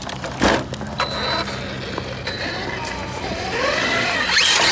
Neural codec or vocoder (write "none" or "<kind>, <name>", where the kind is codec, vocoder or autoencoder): none